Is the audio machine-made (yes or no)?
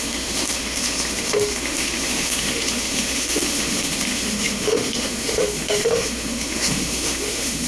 yes